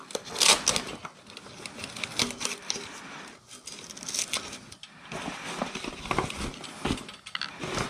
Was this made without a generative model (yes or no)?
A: yes